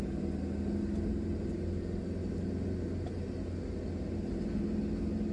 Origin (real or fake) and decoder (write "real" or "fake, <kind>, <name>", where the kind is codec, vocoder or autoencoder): real